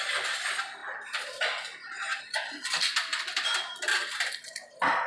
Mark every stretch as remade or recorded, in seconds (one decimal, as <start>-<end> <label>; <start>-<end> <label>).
0.0-0.8 remade; 0.8-2.2 recorded; 2.2-3.5 remade; 3.5-4.3 recorded; 4.3-5.1 remade